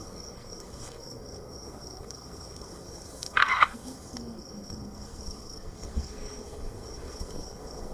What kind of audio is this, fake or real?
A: fake